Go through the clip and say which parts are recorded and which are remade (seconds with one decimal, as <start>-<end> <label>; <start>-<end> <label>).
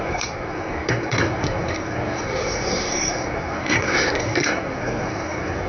0.0-5.7 remade